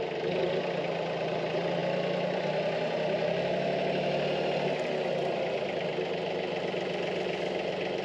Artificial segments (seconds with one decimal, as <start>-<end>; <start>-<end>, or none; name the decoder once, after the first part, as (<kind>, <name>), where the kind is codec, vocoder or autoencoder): none